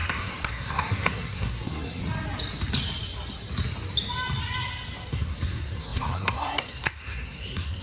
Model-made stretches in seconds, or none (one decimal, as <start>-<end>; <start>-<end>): 0.0-2.0; 5.1-7.8